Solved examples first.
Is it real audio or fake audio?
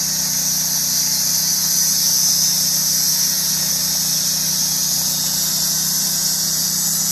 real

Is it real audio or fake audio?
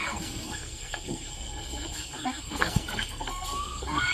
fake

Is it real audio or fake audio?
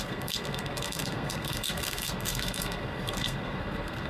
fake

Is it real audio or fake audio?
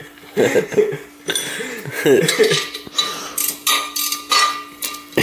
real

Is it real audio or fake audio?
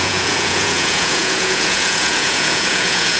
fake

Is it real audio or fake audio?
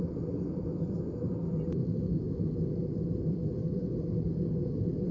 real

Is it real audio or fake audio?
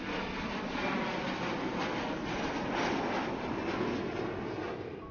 real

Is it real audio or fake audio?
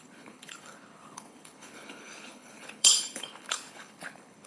fake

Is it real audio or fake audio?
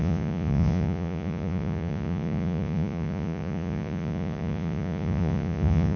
fake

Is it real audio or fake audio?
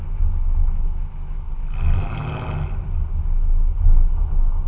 real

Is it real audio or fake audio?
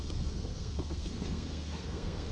fake